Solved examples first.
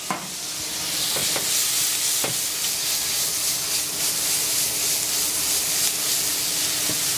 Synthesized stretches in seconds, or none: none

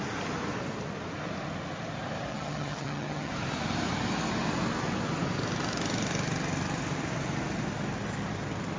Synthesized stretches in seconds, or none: 2.3-3.3 (vocoder, HiFi-GAN)

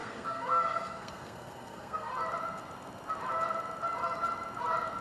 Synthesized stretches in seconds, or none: 0.0-2.1 (codec, SNAC)

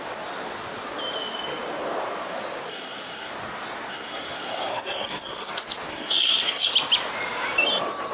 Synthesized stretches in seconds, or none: 2.7-3.3 (codec, SNAC); 3.9-5.5; 5.9-6.7

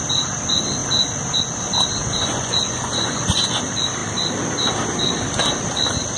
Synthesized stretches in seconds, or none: 2.0-3.6 (vocoder, Vocos)